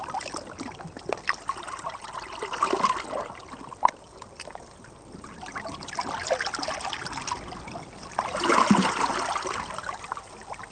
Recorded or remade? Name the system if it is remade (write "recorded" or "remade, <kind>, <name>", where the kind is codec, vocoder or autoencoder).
recorded